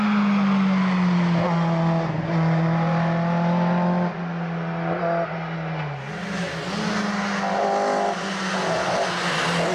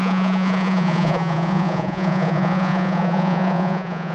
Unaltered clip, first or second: first